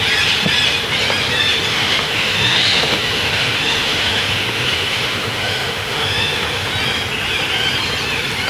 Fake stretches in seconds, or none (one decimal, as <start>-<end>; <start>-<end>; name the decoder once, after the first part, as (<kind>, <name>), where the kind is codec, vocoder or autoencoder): 1.7-6.7 (autoencoder, DAC-VAE)